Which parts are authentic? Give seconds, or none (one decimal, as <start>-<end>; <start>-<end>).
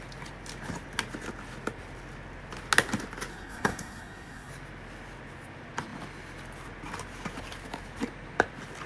0.0-3.3; 4.5-8.9